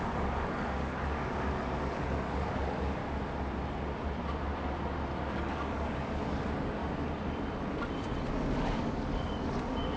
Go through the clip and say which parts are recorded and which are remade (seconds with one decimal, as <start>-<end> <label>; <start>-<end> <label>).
0.0-3.0 remade; 3.0-5.3 recorded; 5.3-6.8 remade; 6.8-8.3 recorded; 8.3-10.0 remade